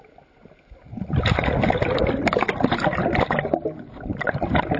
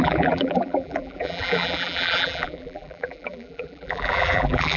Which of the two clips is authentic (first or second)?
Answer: first